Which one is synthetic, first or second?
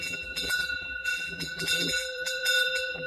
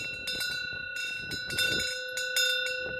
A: first